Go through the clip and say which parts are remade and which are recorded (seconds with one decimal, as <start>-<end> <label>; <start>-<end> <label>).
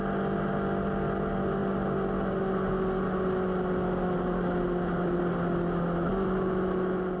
0.0-7.2 recorded